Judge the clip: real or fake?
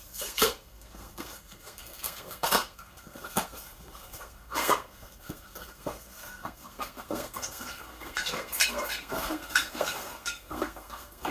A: fake